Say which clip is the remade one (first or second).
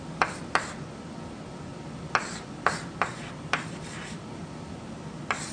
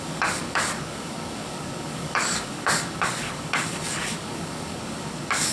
second